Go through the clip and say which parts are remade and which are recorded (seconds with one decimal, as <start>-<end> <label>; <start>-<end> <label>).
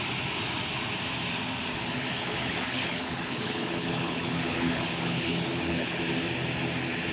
0.0-1.8 recorded; 1.8-6.0 remade; 6.0-7.1 recorded